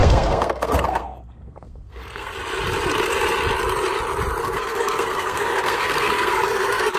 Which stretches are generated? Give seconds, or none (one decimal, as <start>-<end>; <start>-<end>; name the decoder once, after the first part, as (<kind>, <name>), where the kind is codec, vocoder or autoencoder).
0.0-2.3 (codec, SNAC); 4.4-7.0